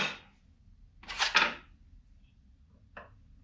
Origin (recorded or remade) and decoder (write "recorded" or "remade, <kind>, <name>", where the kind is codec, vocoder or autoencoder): recorded